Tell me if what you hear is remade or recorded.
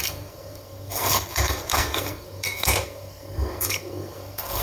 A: remade